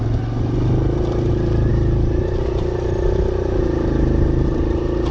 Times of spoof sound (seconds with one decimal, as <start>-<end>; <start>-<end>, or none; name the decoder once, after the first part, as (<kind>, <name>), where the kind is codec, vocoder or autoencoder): none